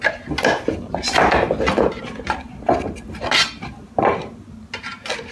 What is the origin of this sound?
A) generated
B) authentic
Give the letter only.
B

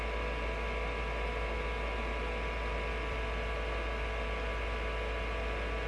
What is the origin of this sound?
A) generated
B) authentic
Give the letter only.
B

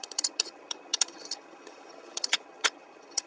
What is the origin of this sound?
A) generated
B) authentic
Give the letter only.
A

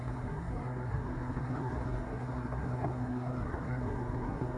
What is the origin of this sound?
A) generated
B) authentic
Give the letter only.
A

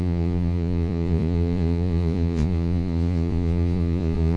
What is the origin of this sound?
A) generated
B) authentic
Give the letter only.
A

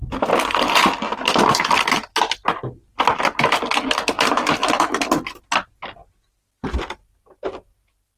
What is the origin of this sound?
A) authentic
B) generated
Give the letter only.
A